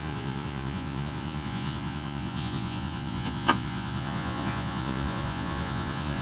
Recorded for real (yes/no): no